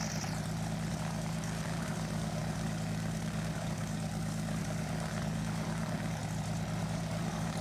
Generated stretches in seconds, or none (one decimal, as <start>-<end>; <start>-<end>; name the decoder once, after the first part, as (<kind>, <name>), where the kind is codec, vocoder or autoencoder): 0.9-6.2 (codec, DAC); 6.8-7.6